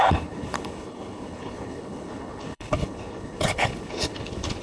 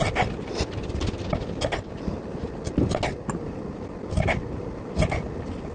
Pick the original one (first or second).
second